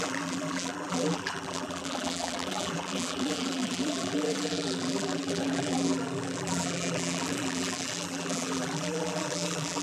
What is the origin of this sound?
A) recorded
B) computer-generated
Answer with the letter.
B